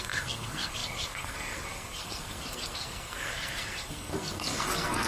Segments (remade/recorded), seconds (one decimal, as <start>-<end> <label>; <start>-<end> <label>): 0.0-5.1 remade